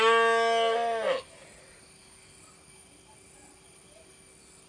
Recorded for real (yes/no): yes